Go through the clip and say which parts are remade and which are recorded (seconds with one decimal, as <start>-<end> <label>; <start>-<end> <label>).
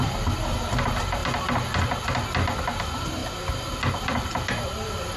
0.0-1.2 remade; 1.2-2.8 recorded; 2.8-3.2 remade; 3.2-3.9 recorded; 3.9-5.2 remade